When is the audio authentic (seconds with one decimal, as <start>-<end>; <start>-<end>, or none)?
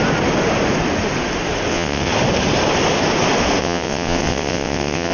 0.0-1.7; 2.1-3.6